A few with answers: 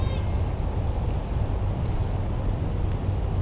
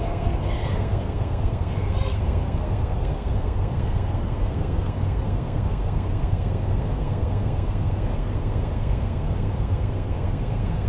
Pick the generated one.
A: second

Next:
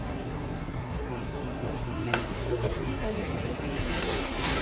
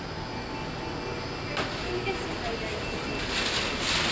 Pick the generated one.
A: first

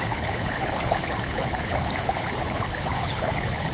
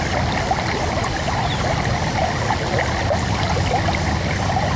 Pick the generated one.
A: first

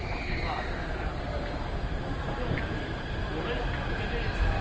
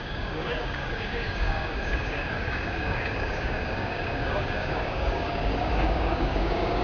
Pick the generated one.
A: second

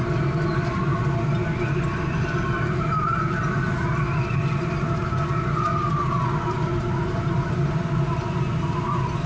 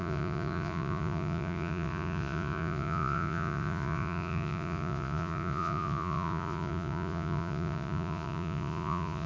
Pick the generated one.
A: second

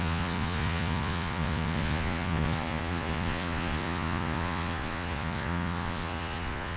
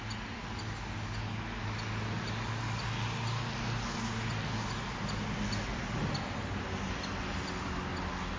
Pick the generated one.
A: first